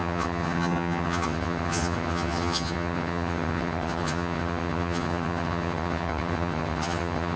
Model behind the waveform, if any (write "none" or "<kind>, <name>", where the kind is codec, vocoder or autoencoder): vocoder, HiFi-GAN